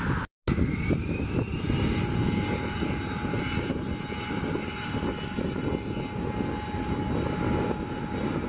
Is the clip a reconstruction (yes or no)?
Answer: no